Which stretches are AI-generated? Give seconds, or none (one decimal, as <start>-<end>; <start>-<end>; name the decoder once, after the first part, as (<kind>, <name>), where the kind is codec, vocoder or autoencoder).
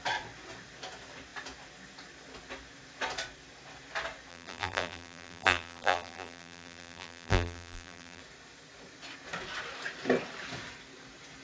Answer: 4.3-8.2 (vocoder, BigVGAN v2)